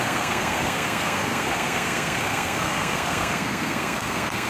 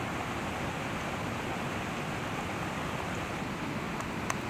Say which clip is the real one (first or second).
second